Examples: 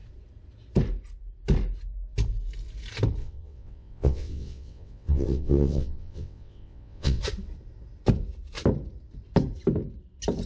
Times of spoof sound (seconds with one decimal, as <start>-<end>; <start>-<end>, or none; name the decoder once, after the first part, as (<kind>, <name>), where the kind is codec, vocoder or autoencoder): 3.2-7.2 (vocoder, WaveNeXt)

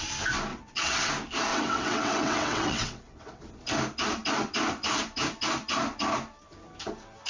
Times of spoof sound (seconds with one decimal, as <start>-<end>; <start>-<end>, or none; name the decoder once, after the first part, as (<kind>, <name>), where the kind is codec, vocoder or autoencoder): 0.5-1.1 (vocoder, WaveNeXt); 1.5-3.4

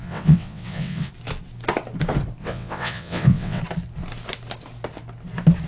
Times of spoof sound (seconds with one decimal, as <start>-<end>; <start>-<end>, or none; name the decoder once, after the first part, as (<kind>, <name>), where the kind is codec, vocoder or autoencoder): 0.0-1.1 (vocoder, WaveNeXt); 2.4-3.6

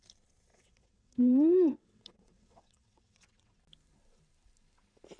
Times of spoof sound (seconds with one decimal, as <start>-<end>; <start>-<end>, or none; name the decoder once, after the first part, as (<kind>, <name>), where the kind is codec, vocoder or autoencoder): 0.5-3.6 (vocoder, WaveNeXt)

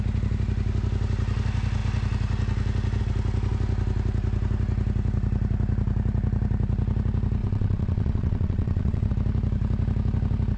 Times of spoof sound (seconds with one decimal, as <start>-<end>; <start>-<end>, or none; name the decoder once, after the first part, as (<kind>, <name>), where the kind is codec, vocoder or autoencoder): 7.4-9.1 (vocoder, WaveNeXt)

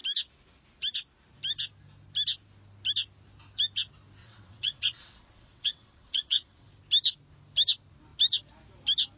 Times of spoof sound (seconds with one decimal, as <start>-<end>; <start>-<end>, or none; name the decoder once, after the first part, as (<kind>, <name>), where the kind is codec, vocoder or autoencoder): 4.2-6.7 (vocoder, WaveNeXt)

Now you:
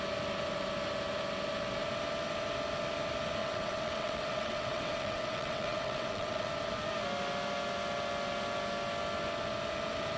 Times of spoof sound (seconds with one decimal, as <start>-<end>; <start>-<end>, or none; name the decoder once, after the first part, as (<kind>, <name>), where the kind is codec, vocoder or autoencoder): 3.4-6.5 (vocoder, WaveNeXt)